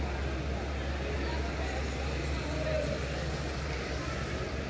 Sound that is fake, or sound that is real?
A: real